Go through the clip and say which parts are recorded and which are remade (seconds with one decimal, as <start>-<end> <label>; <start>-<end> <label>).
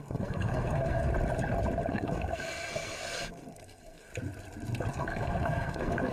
0.0-1.1 remade; 1.1-1.9 recorded; 1.9-4.1 remade; 4.1-4.9 recorded; 4.9-6.1 remade